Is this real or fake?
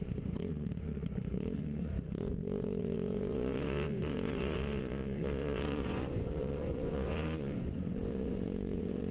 fake